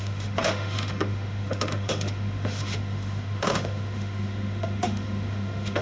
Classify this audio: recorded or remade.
remade